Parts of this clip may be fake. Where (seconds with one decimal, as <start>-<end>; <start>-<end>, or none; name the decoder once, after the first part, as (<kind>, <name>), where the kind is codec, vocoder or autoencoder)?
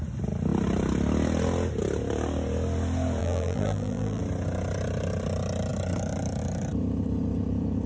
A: 3.2-4.2 (vocoder, BigVGAN v2)